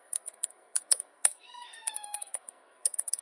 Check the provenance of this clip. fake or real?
fake